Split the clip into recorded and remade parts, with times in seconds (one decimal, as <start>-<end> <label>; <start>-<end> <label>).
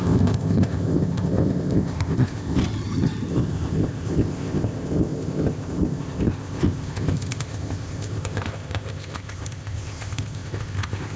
0.0-2.6 remade; 2.6-3.3 recorded; 3.3-11.2 remade